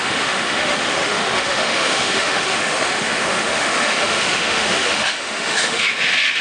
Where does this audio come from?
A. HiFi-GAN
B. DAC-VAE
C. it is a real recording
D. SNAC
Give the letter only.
B